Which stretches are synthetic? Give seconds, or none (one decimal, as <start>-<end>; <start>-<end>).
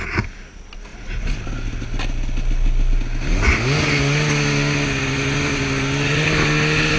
none